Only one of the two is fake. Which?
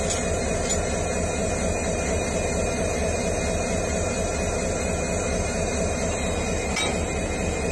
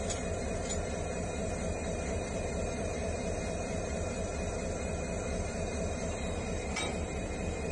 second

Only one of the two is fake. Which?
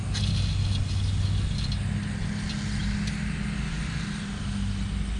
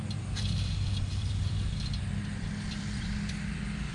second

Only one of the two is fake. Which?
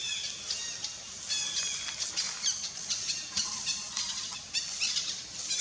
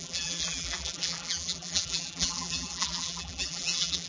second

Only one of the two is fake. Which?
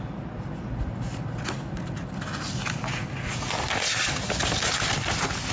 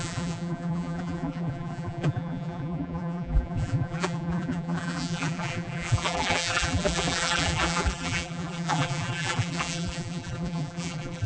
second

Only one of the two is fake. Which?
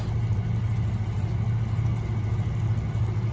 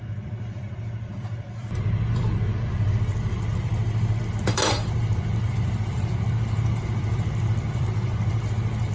second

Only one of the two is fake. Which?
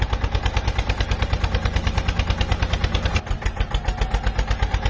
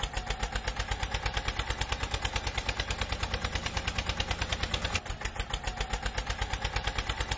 second